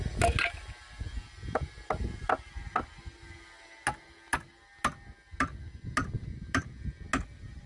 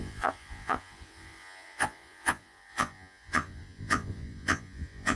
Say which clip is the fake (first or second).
second